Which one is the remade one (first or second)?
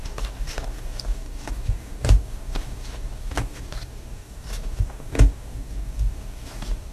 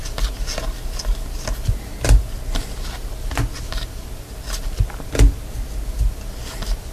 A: first